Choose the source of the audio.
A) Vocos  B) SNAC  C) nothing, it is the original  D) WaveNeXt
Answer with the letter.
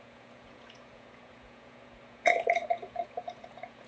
A